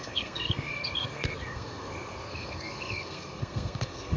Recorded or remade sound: remade